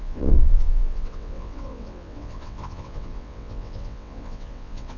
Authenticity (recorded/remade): remade